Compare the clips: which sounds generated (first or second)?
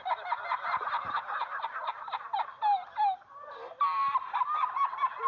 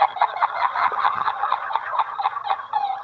second